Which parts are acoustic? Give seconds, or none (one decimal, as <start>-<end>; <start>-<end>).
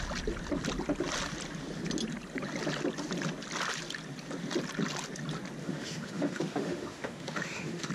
0.0-5.6